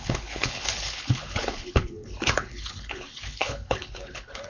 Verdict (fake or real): fake